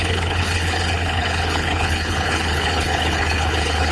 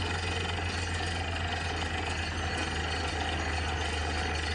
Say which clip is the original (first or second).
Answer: second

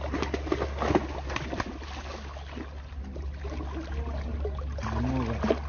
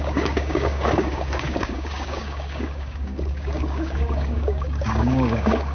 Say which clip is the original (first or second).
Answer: first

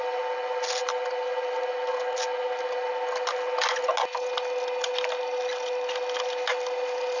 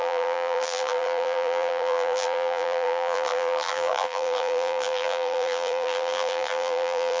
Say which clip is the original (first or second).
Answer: first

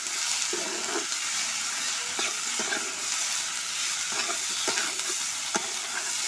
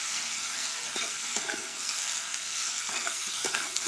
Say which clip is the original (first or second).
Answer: first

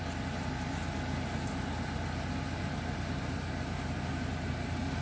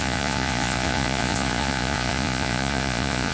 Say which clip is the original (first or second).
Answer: first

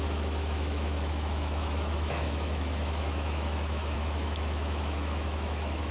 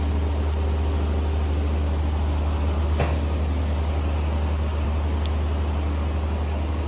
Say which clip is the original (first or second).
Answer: second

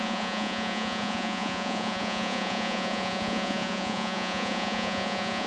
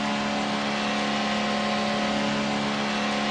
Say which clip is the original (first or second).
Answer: second